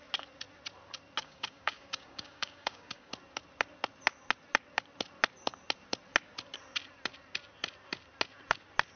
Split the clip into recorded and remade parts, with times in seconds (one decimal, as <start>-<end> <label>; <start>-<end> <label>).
0.0-1.2 recorded; 1.2-3.1 remade; 3.1-9.0 recorded